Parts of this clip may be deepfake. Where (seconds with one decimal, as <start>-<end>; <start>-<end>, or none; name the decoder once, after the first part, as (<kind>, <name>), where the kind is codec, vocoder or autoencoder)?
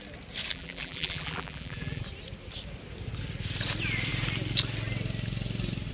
0.5-2.0 (vocoder, BigVGAN v2)